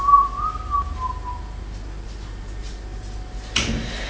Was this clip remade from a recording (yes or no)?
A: no